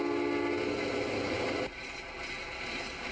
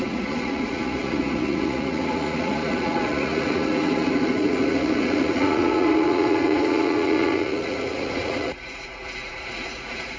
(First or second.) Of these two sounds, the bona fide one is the first